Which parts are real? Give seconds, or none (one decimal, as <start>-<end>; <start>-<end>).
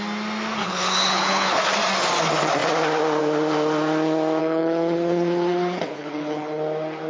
0.0-0.6; 1.6-4.4; 6.6-7.1